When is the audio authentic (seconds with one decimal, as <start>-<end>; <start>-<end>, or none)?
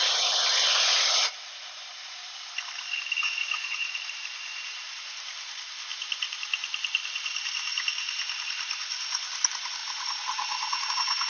0.0-3.2; 4.0-5.9; 9.4-11.3